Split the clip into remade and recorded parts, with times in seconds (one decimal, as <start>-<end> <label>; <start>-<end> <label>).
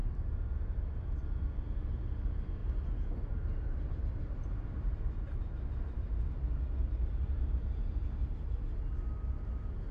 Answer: 0.0-2.6 recorded; 2.6-6.3 remade; 6.3-6.9 recorded; 6.9-8.8 remade; 8.8-9.9 recorded